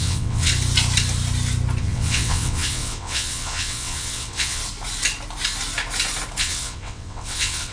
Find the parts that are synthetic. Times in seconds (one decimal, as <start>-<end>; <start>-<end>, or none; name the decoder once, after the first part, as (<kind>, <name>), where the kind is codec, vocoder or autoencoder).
0.0-0.5 (vocoder, WaveNeXt); 1.8-4.6; 6.4-7.7